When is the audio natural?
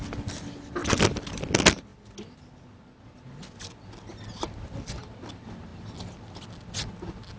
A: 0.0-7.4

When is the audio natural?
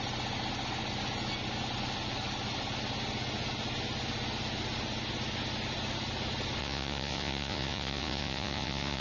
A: 0.0-6.6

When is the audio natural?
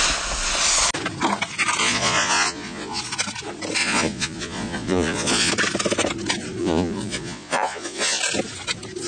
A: 0.0-1.8; 3.0-3.8; 5.5-6.6; 8.2-9.1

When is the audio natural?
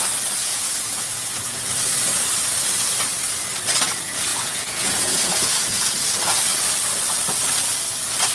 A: 0.0-0.4; 1.7-4.3; 5.8-8.3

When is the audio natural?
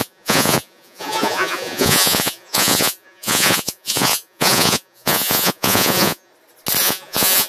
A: 6.3-6.8